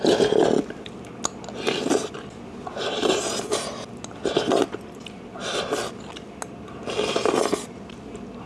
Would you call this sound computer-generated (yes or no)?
no